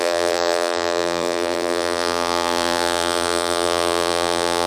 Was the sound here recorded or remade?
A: remade